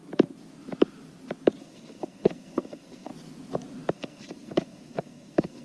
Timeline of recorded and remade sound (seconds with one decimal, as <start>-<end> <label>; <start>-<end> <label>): 0.0-1.6 recorded; 1.6-3.1 remade; 3.1-3.9 recorded; 3.9-5.6 remade